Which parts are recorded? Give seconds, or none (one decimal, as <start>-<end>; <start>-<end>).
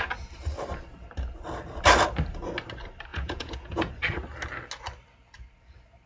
0.0-3.1; 3.9-6.1